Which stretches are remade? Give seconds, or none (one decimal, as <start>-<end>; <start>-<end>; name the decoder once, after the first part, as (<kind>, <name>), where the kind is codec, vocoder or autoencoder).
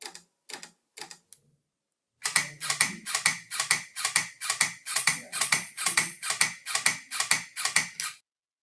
4.9-6.3 (vocoder, Vocos)